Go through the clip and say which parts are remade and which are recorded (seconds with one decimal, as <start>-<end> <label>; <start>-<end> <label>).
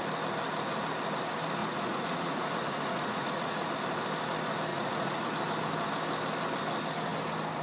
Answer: 0.0-1.6 recorded; 1.6-3.7 remade; 3.7-4.7 recorded; 4.7-5.3 remade; 5.3-7.6 recorded